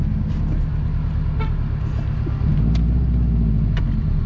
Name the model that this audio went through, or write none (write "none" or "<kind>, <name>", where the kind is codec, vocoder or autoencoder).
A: none